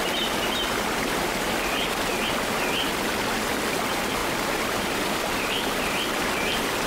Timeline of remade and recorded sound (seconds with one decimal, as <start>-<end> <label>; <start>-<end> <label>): 0.0-4.2 recorded; 4.2-6.9 remade